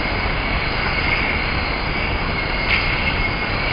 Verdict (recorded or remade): recorded